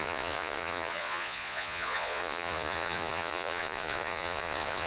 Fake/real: fake